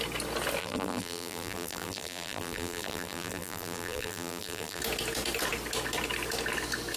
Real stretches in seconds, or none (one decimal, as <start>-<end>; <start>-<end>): 0.0-0.6; 4.8-7.0